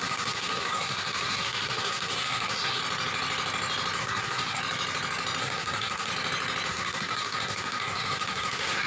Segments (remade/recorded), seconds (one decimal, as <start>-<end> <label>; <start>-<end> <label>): 0.0-2.8 remade; 2.8-4.0 recorded; 4.0-4.6 remade; 4.6-5.4 recorded; 5.4-6.1 remade; 6.1-6.7 recorded; 6.7-8.9 remade